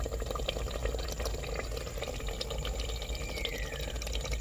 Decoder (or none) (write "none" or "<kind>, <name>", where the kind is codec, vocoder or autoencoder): none